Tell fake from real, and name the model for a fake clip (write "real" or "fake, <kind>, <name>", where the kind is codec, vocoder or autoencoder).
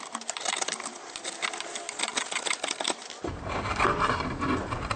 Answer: real